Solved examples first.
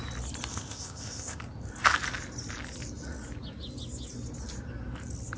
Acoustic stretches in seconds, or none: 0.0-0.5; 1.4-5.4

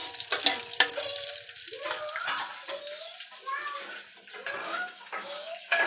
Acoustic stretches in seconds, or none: 0.0-4.6

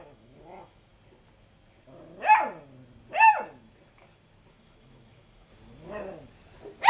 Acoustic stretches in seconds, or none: 0.9-4.5; 5.5-6.9

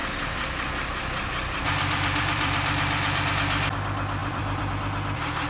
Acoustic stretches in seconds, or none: 3.3-4.2; 4.7-5.5

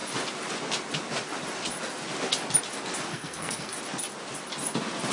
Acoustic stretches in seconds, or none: 0.0-3.1; 3.8-5.1

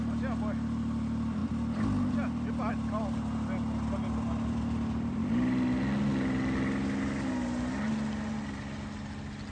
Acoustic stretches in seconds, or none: 0.0-9.5